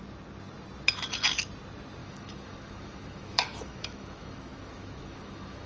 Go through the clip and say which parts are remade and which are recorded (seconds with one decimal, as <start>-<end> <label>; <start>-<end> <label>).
0.0-2.0 recorded; 2.0-5.7 remade